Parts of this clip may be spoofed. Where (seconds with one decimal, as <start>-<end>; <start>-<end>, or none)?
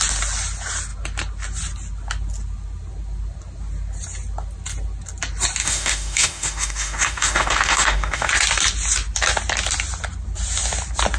5.6-8.3